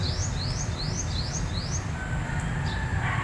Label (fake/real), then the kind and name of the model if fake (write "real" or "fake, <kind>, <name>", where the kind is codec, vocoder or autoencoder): real